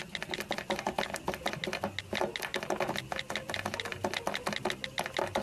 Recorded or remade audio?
recorded